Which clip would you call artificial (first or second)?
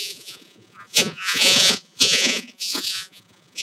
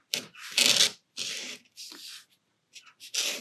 first